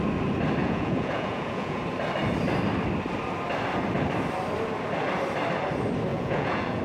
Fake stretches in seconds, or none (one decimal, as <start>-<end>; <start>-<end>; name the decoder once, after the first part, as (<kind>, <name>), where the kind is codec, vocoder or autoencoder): 0.6-1.8 (vocoder, Vocos); 6.1-6.8